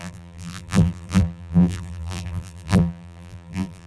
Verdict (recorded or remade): remade